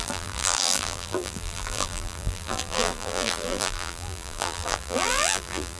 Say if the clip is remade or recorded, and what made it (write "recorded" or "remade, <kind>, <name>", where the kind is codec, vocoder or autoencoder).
remade, vocoder, BigVGAN v2